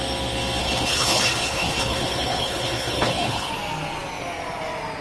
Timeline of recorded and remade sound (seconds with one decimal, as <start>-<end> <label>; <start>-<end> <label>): 0.0-0.6 recorded; 0.6-3.5 remade; 3.5-5.0 recorded